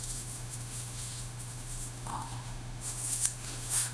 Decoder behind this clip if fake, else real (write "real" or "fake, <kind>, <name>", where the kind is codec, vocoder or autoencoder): fake, autoencoder, DAC-VAE